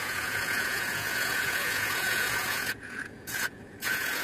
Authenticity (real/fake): fake